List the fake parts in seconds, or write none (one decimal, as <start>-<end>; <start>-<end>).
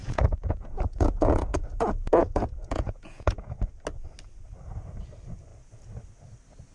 0.0-3.7